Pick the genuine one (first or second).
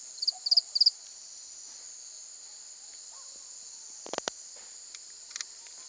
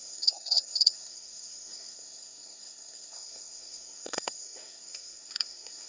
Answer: first